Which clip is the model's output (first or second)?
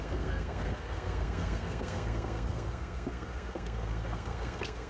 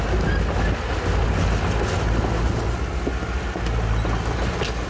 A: first